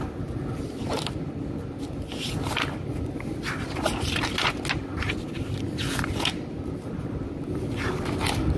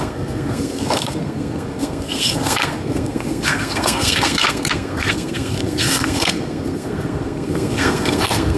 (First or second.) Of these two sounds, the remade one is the second